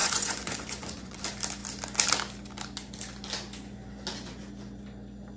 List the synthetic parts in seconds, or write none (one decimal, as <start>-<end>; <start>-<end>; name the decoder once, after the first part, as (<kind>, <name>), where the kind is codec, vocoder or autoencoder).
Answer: 0.0-1.2 (vocoder, Vocos)